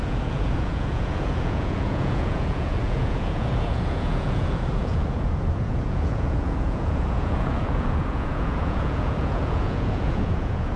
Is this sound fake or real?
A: fake